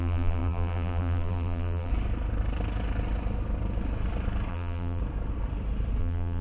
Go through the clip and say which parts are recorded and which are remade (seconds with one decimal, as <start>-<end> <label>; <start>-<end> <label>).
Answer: 0.0-1.9 remade; 1.9-4.5 recorded; 4.5-5.0 remade; 5.0-6.0 recorded; 6.0-6.4 remade

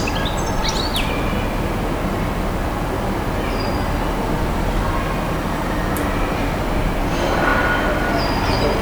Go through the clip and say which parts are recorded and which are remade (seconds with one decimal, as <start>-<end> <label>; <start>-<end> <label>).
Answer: 0.0-8.8 recorded